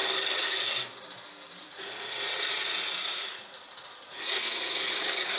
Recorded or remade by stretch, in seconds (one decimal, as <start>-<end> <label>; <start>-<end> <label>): 0.0-1.6 recorded; 1.6-5.4 remade